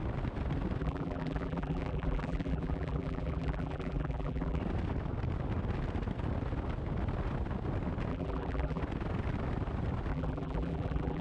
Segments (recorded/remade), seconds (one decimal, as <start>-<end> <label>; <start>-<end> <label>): 0.0-0.8 recorded; 0.8-4.6 remade; 4.6-8.1 recorded; 8.1-8.8 remade; 8.8-10.1 recorded; 10.1-11.2 remade

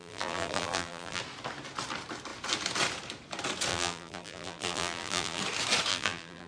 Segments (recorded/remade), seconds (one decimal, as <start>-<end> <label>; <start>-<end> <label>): 0.0-1.2 remade; 1.2-3.7 recorded; 3.7-5.4 remade; 5.4-5.9 recorded; 5.9-6.5 remade

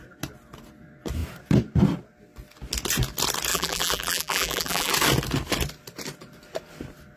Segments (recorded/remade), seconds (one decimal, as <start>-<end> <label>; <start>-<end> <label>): 0.0-3.5 recorded; 3.5-4.9 remade; 4.9-7.2 recorded

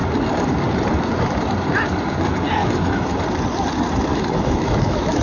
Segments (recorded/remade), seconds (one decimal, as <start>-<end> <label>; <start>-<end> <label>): 0.0-2.6 recorded; 2.6-3.2 remade; 3.2-4.1 recorded; 4.1-5.2 remade

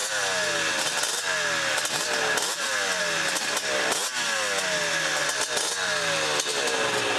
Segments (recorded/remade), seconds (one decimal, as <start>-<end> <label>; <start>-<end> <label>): 0.0-7.2 recorded